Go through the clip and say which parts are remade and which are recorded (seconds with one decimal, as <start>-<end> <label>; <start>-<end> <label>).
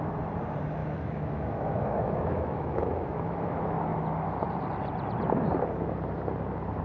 0.0-0.8 recorded; 0.8-3.5 remade; 3.5-6.8 recorded